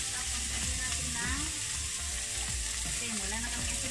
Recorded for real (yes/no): yes